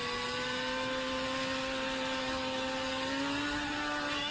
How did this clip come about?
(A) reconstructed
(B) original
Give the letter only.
B